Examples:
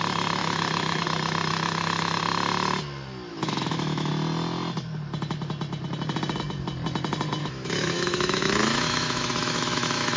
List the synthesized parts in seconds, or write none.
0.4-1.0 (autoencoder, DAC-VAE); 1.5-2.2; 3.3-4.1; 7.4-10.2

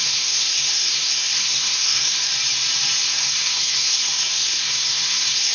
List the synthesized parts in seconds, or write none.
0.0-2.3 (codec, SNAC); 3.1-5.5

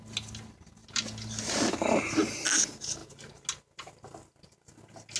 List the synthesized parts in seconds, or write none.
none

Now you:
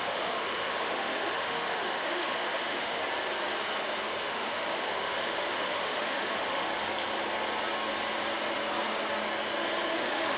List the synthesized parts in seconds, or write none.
0.0-3.0 (autoencoder, DAC-VAE); 4.2-6.8; 9.9-10.4

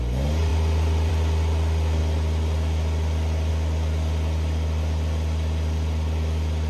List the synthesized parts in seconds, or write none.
none

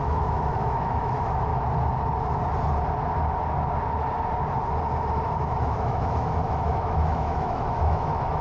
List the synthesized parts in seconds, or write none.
0.0-1.5 (autoencoder, DAC-VAE); 5.6-8.4

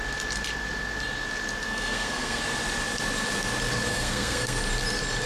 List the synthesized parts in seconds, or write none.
1.6-2.4 (codec, SNAC); 3.9-4.6